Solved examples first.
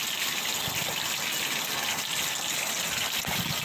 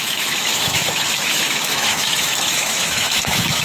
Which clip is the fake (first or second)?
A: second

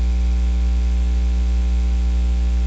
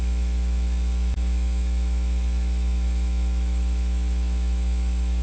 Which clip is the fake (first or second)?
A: second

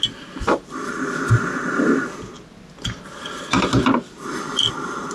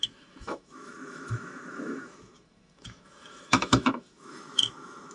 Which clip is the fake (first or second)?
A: second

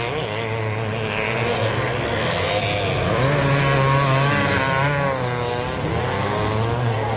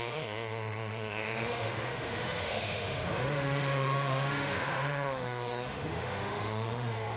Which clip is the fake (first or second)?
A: second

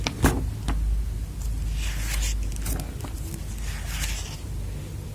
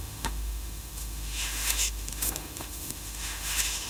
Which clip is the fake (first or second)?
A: second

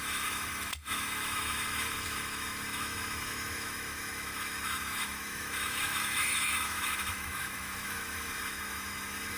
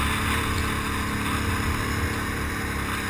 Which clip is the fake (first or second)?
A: first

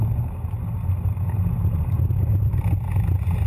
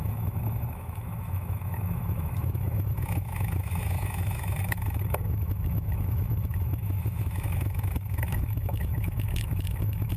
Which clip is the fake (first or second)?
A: second